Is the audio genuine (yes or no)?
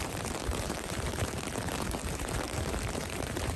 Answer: no